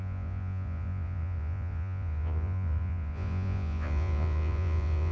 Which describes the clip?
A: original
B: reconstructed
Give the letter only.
B